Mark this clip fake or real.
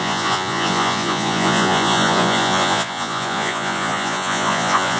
fake